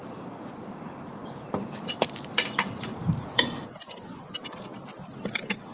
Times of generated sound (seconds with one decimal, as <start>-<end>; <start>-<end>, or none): 0.0-3.4